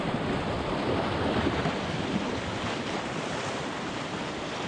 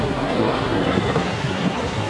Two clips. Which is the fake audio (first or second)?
second